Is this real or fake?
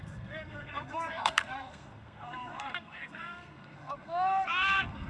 fake